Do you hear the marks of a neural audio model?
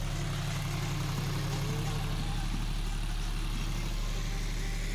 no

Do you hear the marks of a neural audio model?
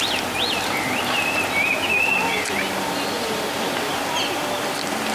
no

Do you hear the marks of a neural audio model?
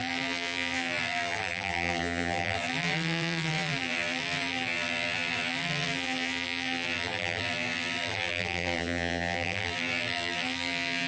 yes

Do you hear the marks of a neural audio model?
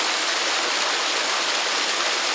no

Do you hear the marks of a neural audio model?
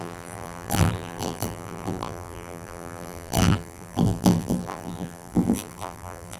yes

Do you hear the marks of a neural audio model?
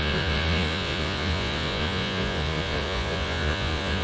yes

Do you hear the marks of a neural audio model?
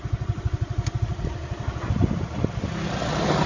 no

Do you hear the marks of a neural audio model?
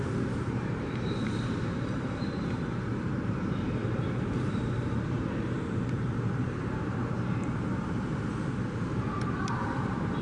yes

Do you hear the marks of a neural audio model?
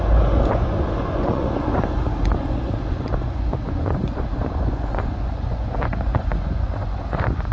yes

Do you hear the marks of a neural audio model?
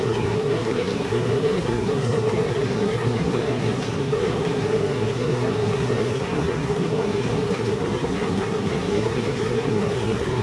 yes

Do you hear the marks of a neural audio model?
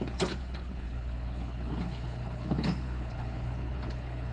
yes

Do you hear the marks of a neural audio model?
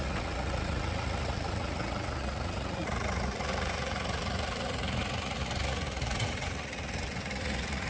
yes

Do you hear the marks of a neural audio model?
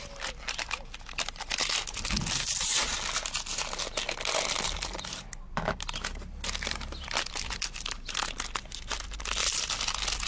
no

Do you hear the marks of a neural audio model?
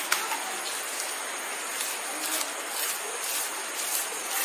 no